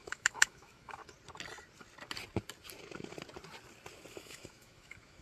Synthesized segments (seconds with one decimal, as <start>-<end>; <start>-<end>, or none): 0.0-1.0; 4.1-5.2